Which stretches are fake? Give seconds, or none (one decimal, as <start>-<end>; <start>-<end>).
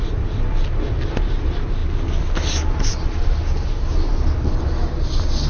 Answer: none